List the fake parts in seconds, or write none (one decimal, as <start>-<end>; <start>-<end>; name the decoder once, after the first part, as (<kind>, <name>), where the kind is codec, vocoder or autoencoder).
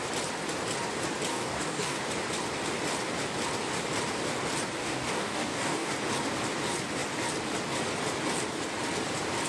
1.3-2.0 (codec, DAC); 4.8-5.9